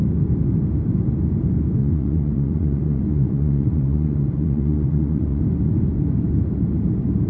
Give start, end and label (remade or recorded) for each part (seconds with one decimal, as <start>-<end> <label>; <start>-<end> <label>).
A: 0.0-1.8 recorded; 1.8-5.4 remade; 5.4-7.3 recorded